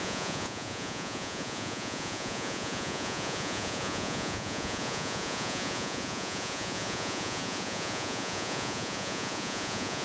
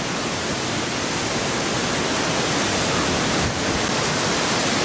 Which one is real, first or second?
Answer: second